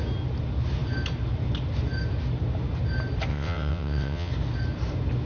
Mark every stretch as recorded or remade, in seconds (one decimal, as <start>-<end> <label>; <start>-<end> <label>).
0.0-3.3 recorded; 3.3-4.3 remade; 4.3-5.3 recorded